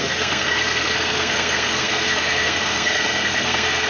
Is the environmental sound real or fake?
fake